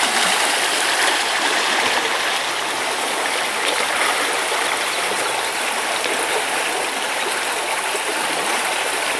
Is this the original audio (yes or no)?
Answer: yes